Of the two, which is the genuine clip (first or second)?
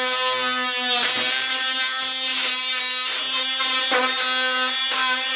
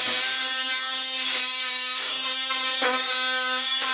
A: first